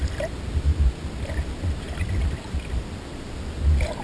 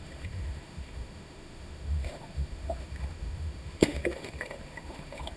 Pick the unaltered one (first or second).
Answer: first